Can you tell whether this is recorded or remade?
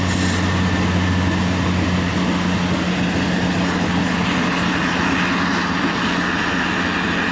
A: recorded